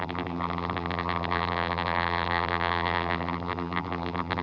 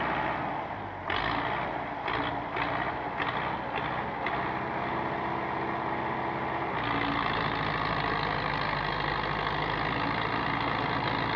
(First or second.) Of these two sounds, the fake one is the first